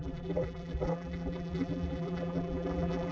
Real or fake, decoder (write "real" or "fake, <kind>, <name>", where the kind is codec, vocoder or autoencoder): fake, vocoder, BigVGAN v2